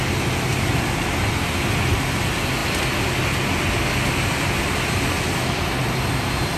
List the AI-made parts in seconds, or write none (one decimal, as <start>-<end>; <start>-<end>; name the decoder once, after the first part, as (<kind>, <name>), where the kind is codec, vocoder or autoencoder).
0.5-1.1 (vocoder, BigVGAN v2); 5.8-6.6